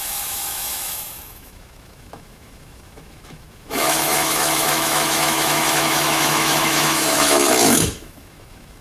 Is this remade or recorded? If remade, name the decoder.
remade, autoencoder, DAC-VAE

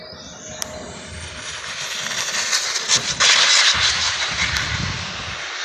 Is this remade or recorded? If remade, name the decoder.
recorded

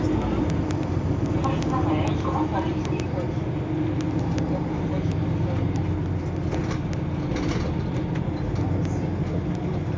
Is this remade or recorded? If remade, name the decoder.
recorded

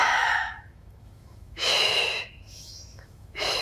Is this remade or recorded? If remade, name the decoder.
remade, autoencoder, DAC-VAE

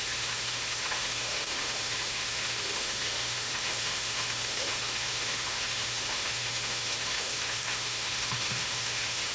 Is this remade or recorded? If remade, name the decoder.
remade, autoencoder, DAC-VAE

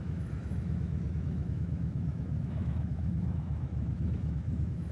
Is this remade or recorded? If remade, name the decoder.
remade, autoencoder, DAC-VAE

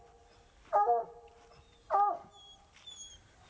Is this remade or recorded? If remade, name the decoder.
recorded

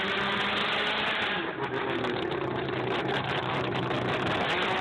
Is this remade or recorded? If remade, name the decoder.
recorded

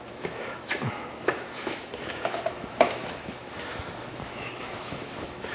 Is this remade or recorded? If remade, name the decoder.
remade, autoencoder, DAC-VAE